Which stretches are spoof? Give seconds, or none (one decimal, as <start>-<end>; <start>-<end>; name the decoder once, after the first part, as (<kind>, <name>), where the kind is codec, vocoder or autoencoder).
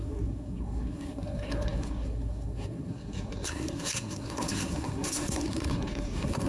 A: 0.0-6.5 (codec, SNAC)